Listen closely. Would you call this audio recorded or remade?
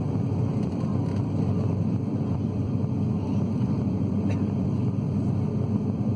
remade